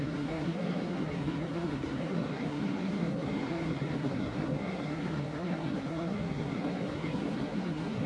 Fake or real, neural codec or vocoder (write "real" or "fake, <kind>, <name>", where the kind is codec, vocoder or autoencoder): fake, codec, SNAC